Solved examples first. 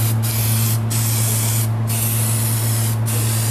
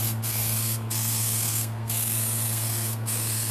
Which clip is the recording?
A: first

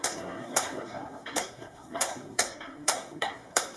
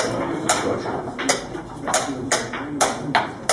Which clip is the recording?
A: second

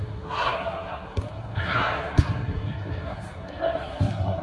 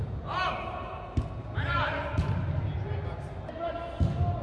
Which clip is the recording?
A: second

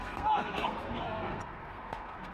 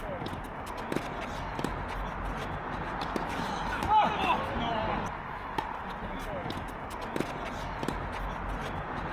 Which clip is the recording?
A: second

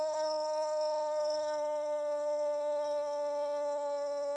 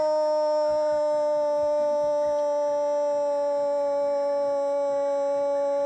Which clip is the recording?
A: second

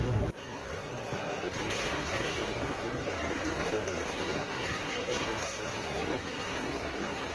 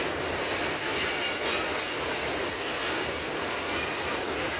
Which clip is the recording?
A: second